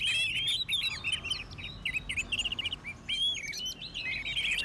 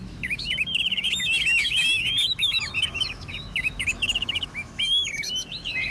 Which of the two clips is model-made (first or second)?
second